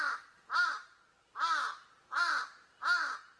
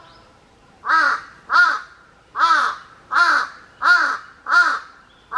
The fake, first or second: second